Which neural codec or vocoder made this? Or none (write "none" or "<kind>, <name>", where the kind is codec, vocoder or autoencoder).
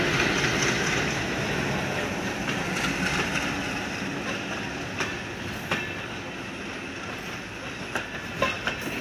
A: none